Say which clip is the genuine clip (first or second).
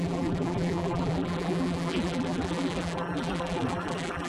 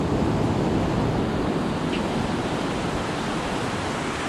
second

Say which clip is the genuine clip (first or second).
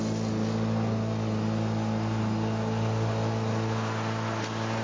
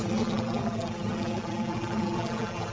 first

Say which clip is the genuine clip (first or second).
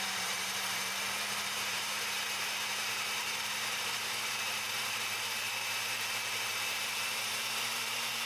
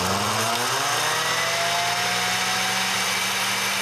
second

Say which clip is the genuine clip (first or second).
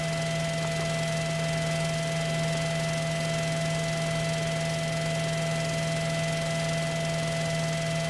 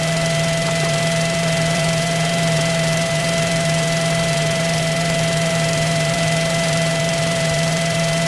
first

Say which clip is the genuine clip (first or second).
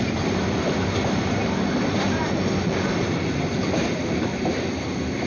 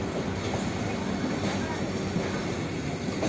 second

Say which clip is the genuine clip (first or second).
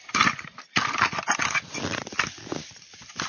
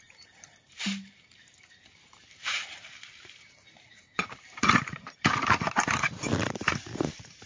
first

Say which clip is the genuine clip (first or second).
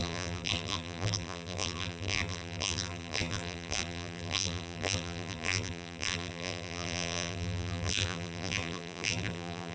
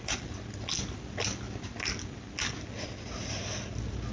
second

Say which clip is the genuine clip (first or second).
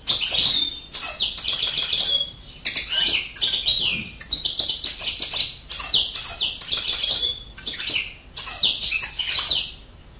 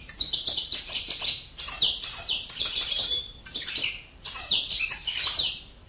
first